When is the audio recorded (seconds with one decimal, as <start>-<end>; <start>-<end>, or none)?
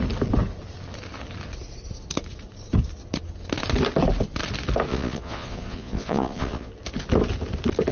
0.0-4.9; 6.7-7.9